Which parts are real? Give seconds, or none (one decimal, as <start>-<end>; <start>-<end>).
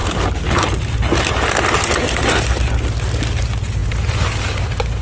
0.0-5.0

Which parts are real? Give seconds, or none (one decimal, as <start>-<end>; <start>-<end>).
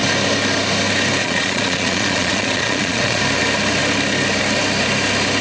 0.0-1.2; 3.2-5.4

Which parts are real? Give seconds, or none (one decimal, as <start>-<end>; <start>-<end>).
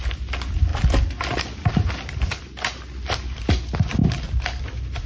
0.0-5.1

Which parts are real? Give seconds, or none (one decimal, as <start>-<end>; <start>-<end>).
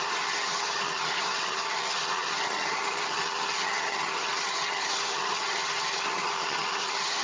none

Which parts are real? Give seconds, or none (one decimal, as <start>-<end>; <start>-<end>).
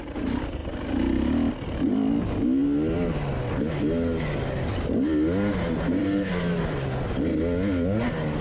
0.0-6.0; 6.6-8.4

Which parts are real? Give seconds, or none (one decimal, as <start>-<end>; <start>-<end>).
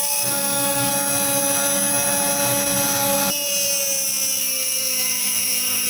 0.9-4.4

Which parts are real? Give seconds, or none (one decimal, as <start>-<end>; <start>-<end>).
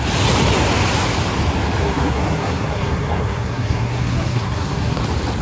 0.0-1.8; 5.0-5.4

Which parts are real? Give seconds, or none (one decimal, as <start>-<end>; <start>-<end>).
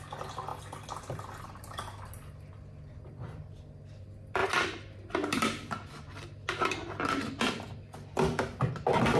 0.0-9.2